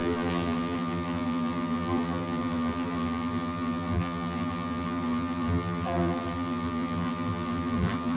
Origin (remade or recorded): remade